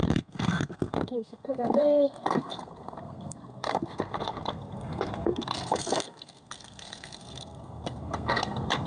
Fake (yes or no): yes